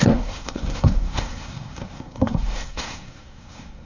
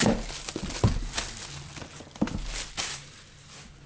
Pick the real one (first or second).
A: second